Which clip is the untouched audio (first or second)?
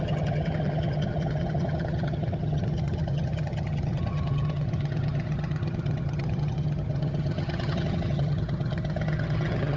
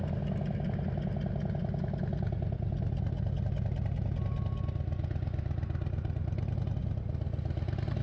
second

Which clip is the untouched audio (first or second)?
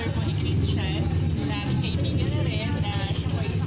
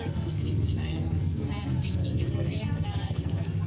first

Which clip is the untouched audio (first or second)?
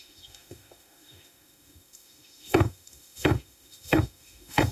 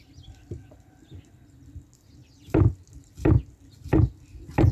second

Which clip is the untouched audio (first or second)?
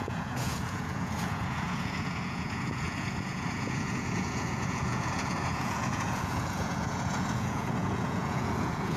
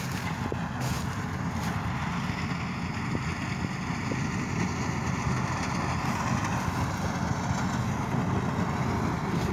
second